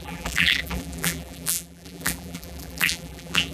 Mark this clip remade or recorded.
remade